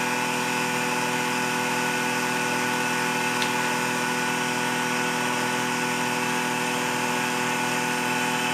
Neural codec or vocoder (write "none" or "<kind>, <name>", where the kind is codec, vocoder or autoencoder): none